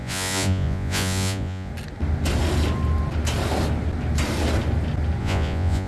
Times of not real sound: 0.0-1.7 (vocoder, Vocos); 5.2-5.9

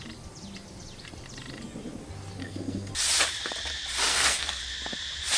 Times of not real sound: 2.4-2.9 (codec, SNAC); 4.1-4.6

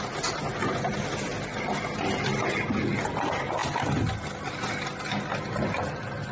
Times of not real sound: none